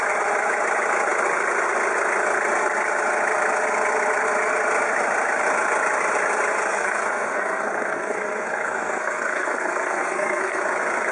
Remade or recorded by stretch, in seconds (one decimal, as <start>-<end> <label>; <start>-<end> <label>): 0.0-6.7 recorded; 6.7-10.6 remade; 10.6-11.1 recorded